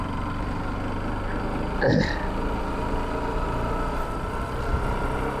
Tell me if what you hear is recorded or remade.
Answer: recorded